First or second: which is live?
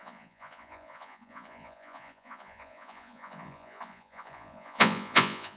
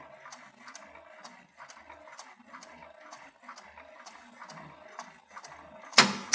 second